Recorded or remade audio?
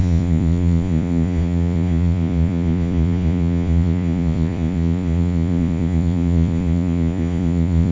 remade